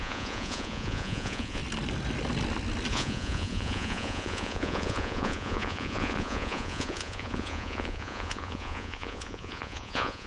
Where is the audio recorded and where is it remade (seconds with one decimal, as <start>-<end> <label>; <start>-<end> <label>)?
0.0-1.6 remade; 1.6-2.9 recorded; 2.9-10.3 remade